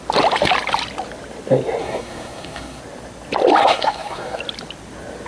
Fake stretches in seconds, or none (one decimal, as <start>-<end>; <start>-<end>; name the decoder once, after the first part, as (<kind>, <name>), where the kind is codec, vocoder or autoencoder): 1.8-2.8 (codec, SNAC); 3.6-4.4